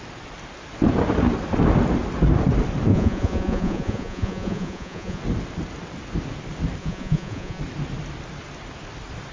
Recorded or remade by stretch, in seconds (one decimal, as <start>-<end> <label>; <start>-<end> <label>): 0.0-2.9 recorded; 2.9-5.2 remade; 5.2-6.8 recorded; 6.8-7.6 remade; 7.6-9.3 recorded